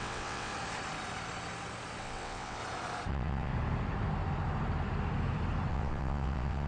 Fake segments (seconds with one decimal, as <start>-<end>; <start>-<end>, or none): 0.0-0.5; 2.0-2.6; 3.1-3.5; 5.7-6.7